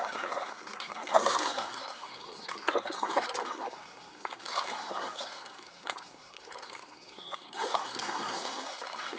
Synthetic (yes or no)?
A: yes